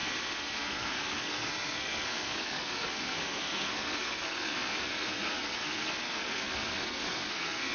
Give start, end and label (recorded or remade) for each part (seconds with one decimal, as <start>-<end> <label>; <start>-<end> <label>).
0.0-7.7 remade